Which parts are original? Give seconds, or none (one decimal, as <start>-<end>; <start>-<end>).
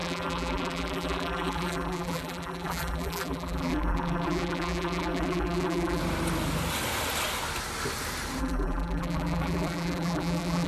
6.0-8.4